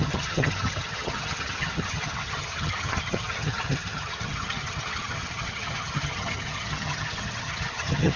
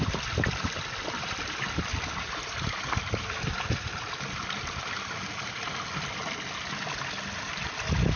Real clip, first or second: second